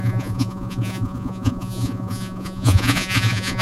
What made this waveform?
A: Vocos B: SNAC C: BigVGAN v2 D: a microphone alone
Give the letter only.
A